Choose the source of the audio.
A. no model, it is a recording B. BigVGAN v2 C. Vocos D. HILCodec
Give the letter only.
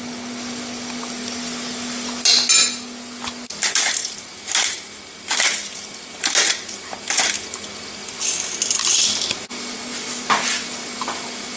A